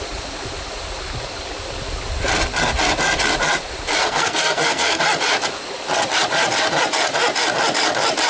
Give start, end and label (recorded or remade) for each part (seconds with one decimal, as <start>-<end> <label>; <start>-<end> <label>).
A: 0.0-4.0 recorded; 4.0-5.0 remade; 5.0-8.3 recorded